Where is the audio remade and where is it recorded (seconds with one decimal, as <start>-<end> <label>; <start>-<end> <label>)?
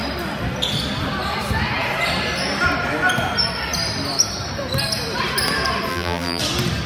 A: 0.0-5.9 recorded; 5.9-6.4 remade; 6.4-6.9 recorded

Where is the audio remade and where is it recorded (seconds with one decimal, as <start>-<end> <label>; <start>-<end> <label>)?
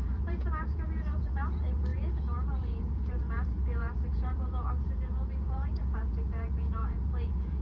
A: 0.0-7.6 remade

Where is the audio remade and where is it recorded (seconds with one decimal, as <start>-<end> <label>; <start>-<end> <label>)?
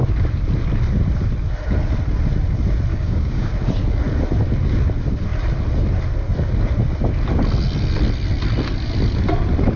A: 0.0-2.9 recorded; 2.9-3.5 remade; 3.5-9.8 recorded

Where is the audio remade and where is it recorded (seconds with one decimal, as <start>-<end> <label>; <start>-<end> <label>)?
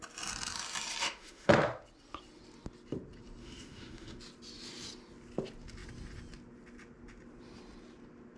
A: 0.0-1.0 recorded; 1.0-1.5 remade; 1.5-3.4 recorded; 3.4-4.2 remade; 4.2-8.4 recorded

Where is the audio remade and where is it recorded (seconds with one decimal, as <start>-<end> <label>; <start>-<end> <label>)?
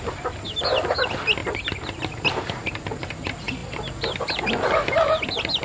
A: 0.0-5.6 recorded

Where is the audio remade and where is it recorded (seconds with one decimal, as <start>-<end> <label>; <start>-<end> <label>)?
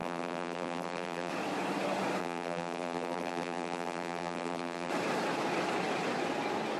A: 0.0-1.3 remade; 1.3-2.2 recorded; 2.2-4.9 remade; 4.9-6.8 recorded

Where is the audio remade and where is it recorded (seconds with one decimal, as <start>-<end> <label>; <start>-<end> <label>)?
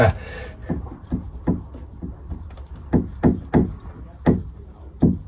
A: 0.0-5.3 recorded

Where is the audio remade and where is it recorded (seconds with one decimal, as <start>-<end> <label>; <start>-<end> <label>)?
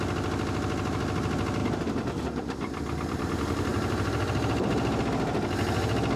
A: 0.0-3.7 recorded; 3.7-5.0 remade; 5.0-6.2 recorded